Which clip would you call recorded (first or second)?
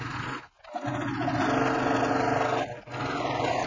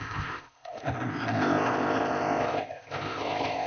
first